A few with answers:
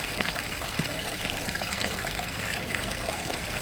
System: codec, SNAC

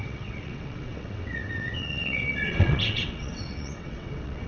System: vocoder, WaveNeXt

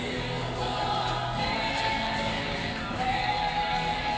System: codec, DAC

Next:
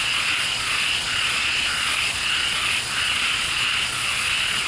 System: vocoder, Vocos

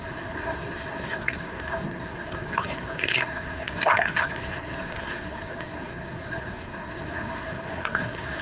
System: codec, SNAC